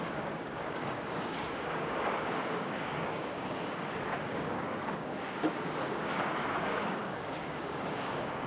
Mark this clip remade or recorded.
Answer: remade